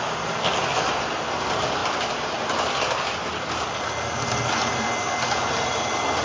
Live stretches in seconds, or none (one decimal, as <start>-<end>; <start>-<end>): 0.0-6.2